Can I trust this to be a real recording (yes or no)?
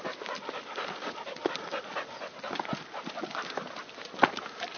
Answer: yes